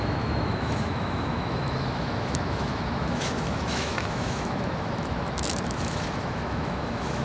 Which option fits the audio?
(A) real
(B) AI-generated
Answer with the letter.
B